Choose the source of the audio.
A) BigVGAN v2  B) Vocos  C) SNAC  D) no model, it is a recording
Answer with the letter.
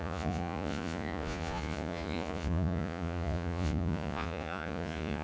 B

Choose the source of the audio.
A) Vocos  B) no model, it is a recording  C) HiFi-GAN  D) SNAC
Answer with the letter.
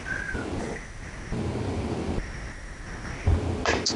B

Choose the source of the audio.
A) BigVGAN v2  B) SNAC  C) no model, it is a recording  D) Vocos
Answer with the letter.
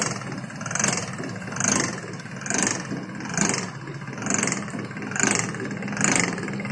C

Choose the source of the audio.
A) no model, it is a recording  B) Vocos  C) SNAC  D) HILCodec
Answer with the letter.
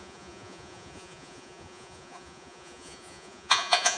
B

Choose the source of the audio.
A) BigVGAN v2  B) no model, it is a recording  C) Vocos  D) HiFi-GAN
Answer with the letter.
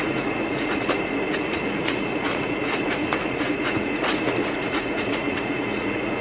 C